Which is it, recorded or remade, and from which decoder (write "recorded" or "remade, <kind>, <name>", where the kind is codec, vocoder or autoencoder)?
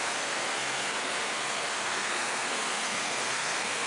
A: remade, codec, SNAC